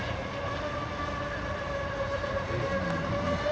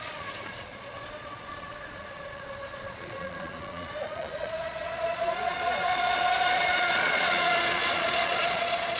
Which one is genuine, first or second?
first